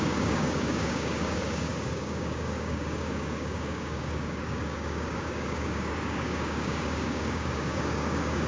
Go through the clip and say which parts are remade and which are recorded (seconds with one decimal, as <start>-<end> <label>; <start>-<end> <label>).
0.0-8.5 remade